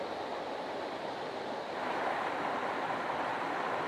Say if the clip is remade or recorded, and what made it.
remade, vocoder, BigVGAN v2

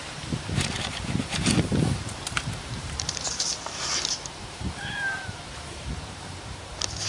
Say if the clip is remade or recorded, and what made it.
remade, vocoder, BigVGAN v2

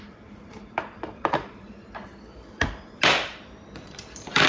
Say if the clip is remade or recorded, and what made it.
remade, vocoder, BigVGAN v2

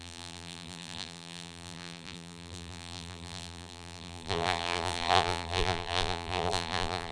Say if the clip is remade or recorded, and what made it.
remade, vocoder, BigVGAN v2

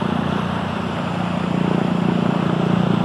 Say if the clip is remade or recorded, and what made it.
recorded